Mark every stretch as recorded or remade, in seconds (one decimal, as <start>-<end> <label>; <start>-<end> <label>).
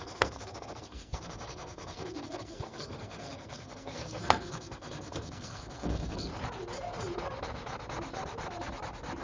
0.0-6.3 remade; 6.3-9.2 recorded